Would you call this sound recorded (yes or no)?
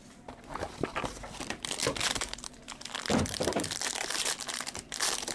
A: no